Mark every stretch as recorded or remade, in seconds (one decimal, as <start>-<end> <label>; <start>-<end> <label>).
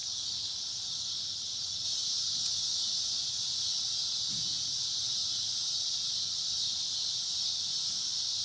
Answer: 0.0-1.1 recorded; 1.1-8.4 remade